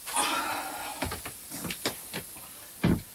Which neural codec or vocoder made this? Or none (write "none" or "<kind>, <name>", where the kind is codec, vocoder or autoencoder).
none